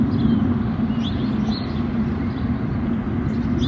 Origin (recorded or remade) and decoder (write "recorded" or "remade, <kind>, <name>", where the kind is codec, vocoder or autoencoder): recorded